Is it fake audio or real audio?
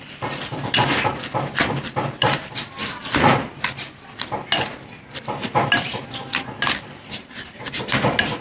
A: real